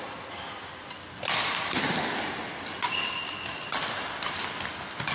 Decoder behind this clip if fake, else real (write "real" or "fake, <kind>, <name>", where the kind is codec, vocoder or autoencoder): real